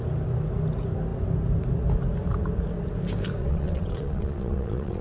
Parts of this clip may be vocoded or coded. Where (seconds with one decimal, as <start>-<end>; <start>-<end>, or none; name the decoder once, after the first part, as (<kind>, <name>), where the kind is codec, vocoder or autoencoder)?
3.4-5.0 (vocoder, WaveNeXt)